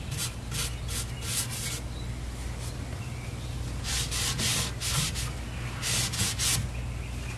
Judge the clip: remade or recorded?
recorded